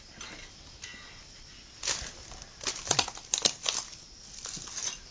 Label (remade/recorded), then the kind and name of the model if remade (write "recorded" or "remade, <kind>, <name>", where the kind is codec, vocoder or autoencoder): recorded